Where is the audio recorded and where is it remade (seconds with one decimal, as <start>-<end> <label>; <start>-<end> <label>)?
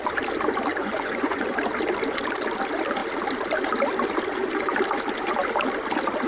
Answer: 0.0-0.8 recorded; 0.8-1.5 remade; 1.5-6.3 recorded